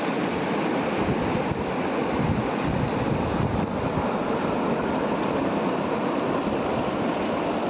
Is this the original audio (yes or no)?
yes